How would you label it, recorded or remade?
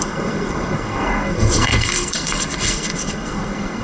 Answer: remade